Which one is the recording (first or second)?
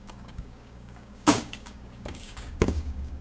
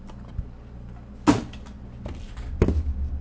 second